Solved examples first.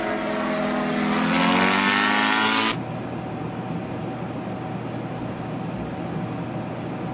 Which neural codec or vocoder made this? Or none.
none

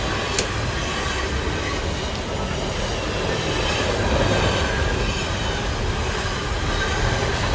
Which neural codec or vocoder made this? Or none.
none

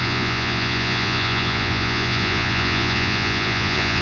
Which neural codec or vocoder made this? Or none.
vocoder, Vocos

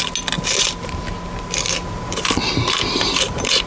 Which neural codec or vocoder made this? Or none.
none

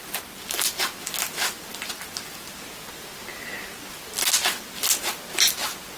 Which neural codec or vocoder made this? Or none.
none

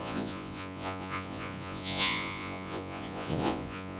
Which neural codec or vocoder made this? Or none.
vocoder, Vocos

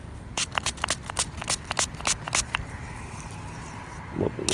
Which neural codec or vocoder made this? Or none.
none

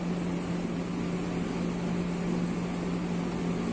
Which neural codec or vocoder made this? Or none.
none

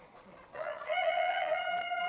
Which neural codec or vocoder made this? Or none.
vocoder, Vocos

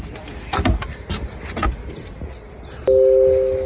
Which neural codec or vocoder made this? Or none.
none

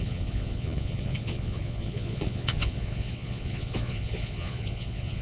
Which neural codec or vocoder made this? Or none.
vocoder, Vocos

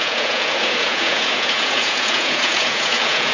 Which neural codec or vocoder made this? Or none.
vocoder, Vocos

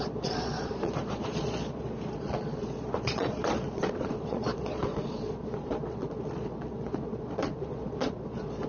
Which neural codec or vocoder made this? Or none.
vocoder, Vocos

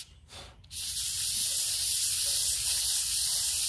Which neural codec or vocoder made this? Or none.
none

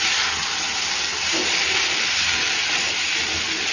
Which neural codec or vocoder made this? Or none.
none